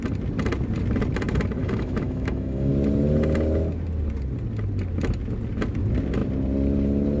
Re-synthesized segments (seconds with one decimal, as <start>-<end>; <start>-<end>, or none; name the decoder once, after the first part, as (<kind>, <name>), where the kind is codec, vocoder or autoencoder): 1.6-2.7 (autoencoder, DAC-VAE)